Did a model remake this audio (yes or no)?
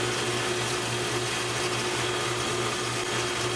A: no